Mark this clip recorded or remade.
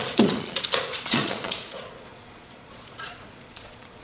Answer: remade